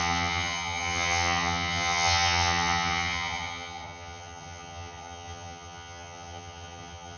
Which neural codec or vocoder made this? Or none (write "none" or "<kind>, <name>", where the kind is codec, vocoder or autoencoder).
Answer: vocoder, HiFi-GAN